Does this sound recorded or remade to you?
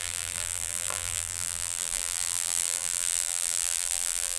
remade